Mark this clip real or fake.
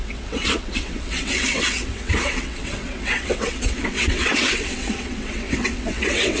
fake